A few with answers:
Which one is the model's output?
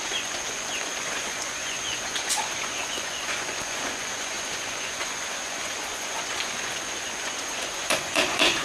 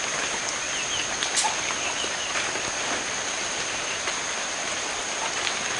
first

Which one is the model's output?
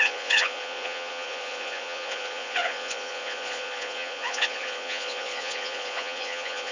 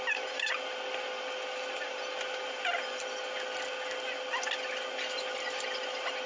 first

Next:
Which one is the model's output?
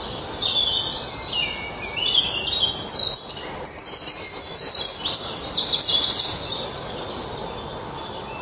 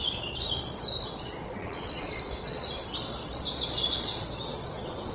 second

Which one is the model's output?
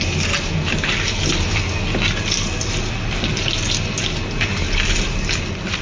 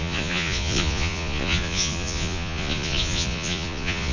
second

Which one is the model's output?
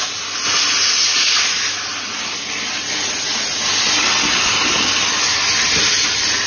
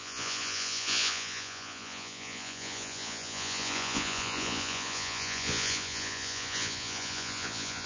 second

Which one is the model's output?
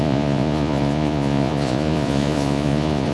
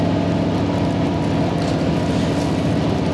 first